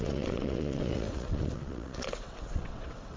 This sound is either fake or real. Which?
fake